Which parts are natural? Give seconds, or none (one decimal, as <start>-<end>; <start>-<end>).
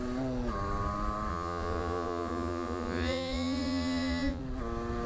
0.0-1.3; 4.4-5.1